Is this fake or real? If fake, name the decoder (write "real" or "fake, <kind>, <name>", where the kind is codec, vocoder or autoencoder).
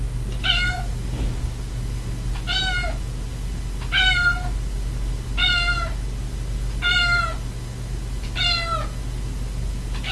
real